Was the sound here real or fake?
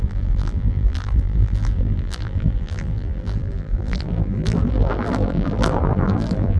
fake